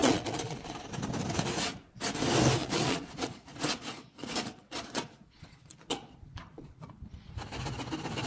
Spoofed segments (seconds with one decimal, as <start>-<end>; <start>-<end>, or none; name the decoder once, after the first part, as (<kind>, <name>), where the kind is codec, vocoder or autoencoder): 0.0-0.9 (vocoder, Vocos); 2.6-7.3